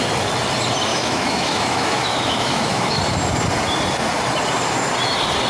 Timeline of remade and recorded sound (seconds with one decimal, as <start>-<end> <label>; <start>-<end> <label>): 0.0-0.9 recorded; 0.9-3.0 remade; 3.0-5.5 recorded